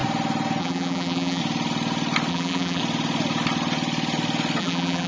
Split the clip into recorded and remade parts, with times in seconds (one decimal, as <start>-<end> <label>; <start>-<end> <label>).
0.0-0.6 recorded; 0.6-1.4 remade; 1.4-2.3 recorded; 2.3-2.8 remade; 2.8-4.6 recorded; 4.6-5.1 remade